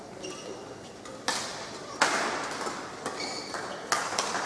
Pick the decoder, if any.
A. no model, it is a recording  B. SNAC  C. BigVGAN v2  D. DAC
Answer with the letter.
A